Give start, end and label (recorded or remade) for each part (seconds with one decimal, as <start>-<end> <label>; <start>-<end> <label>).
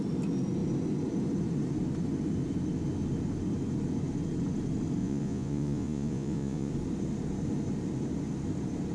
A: 0.0-5.0 recorded; 5.0-6.7 remade; 6.7-8.9 recorded